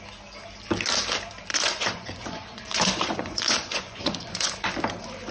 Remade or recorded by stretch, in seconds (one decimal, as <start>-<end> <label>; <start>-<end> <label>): 0.0-1.5 recorded; 1.5-4.7 remade; 4.7-5.3 recorded